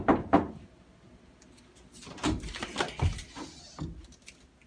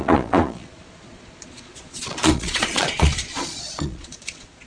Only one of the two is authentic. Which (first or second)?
first